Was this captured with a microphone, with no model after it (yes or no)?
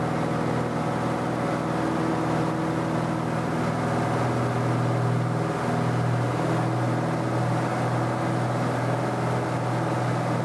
yes